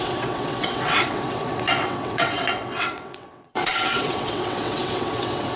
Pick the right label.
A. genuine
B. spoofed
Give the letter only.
B